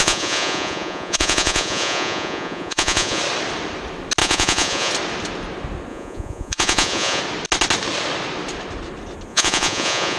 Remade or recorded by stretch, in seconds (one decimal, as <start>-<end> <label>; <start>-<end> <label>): 0.0-3.2 remade; 3.2-4.2 recorded; 4.2-4.9 remade; 4.9-5.9 recorded; 5.9-7.2 remade; 7.2-9.3 recorded; 9.3-10.2 remade